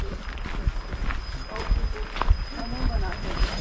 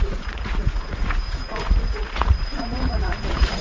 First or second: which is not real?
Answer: second